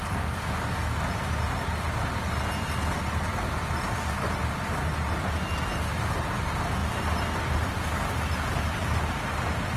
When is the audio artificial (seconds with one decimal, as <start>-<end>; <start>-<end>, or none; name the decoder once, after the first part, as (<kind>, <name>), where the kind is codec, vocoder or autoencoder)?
none